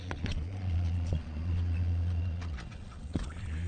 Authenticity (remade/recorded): remade